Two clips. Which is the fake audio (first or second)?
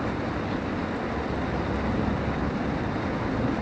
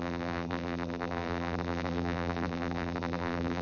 second